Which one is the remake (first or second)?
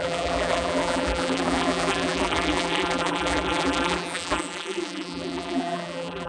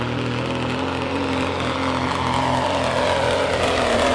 first